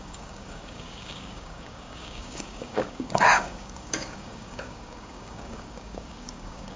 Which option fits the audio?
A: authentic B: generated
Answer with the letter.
B